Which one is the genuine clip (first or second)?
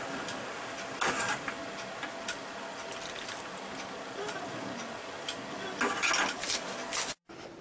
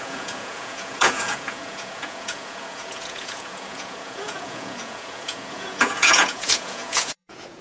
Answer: first